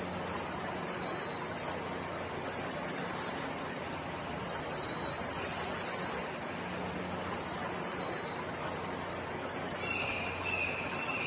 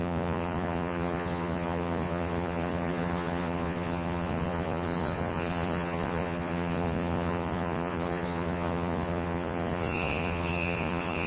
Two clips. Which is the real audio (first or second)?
first